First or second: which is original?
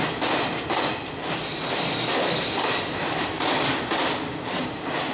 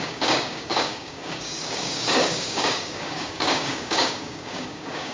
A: first